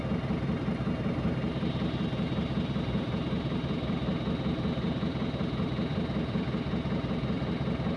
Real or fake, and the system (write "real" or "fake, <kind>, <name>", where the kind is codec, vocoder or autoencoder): fake, vocoder, BigVGAN v2